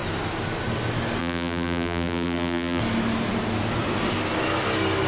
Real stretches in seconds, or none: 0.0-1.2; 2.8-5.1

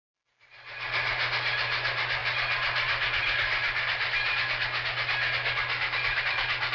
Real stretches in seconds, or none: 0.0-6.7

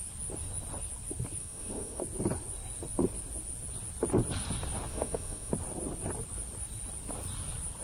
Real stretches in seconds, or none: 0.0-1.4; 2.0-4.9; 5.5-7.8

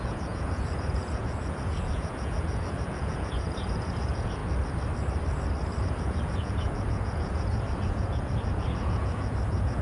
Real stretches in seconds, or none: 4.4-5.8

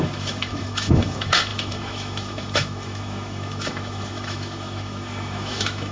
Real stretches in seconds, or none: none